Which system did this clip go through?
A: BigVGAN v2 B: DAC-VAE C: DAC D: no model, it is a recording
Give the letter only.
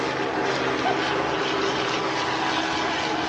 D